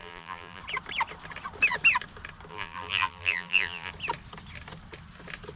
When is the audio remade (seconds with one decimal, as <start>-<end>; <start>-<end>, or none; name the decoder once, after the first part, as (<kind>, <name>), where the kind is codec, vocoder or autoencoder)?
0.0-0.6 (vocoder, BigVGAN v2); 2.5-3.9